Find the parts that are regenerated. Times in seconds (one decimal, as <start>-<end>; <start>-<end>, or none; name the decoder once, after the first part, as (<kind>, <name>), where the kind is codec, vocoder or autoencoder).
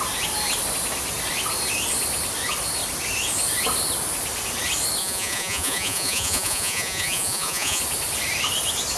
5.0-7.8 (vocoder, Vocos)